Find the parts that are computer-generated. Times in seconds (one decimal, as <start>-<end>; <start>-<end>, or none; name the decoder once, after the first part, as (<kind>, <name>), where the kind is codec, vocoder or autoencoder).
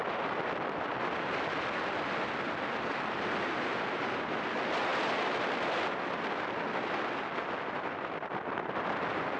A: none